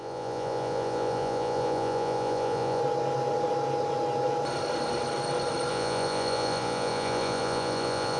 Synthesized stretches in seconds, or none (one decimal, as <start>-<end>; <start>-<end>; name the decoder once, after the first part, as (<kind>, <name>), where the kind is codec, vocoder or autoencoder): 0.0-2.8 (vocoder, Vocos); 5.7-8.2